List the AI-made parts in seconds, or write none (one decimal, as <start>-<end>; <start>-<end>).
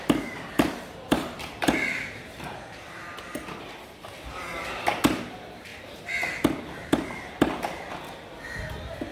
none